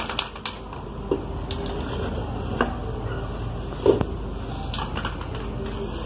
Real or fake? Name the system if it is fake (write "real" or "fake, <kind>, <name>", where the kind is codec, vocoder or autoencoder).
real